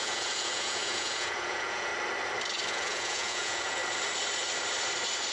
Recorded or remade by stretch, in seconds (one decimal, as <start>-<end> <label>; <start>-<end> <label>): 0.0-1.9 remade; 1.9-2.7 recorded; 2.7-3.8 remade; 3.8-5.3 recorded